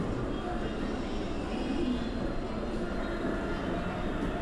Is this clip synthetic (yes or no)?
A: no